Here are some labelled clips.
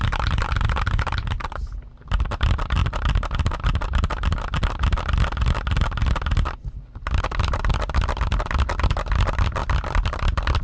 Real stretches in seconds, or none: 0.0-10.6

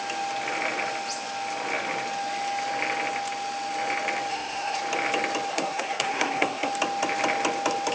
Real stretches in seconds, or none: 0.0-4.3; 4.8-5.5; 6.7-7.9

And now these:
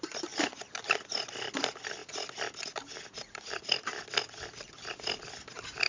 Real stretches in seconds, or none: 0.0-5.9

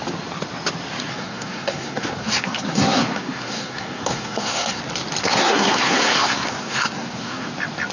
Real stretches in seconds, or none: 0.0-1.1; 4.8-5.2; 7.5-7.9

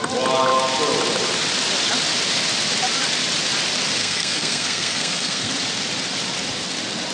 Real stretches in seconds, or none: 0.0-4.0; 5.5-7.1

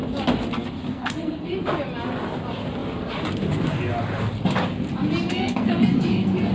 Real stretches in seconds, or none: 0.0-0.9; 1.5-5.3

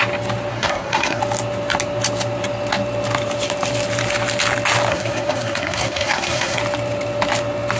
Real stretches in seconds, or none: 0.0-0.5; 1.2-4.9; 6.6-7.8

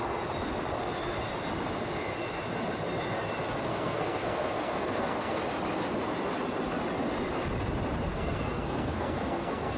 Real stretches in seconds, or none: 0.0-3.7; 5.4-8.1